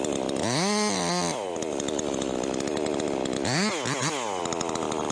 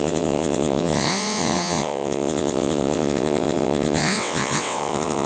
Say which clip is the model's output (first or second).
second